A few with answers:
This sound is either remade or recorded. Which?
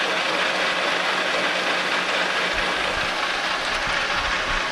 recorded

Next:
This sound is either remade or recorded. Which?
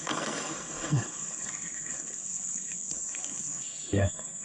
remade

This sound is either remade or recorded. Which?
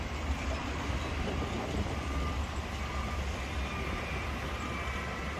remade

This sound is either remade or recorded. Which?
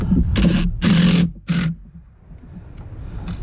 recorded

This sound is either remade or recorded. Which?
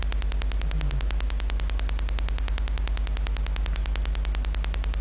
recorded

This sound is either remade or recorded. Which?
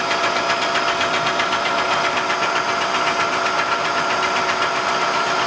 recorded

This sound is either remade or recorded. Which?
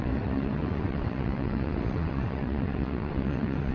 remade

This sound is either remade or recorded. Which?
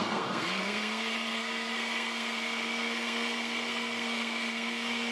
remade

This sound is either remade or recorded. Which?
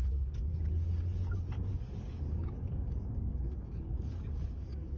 remade